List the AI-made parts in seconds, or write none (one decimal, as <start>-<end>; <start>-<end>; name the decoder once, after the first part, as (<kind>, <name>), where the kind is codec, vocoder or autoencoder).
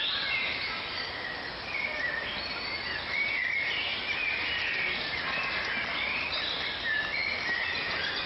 none